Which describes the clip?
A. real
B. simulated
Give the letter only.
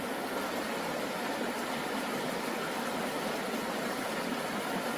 A